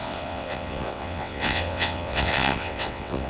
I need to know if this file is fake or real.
fake